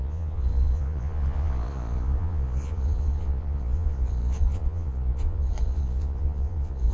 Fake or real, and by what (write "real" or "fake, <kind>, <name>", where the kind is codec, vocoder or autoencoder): fake, vocoder, Vocos